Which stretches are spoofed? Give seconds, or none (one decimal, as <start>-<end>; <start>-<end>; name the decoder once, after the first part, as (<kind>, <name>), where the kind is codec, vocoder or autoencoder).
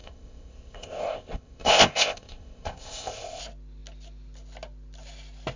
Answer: 0.0-3.4 (codec, ZipCodec)